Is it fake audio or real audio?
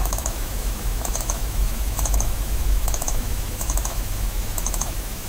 fake